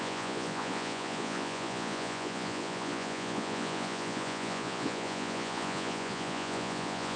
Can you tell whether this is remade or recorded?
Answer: remade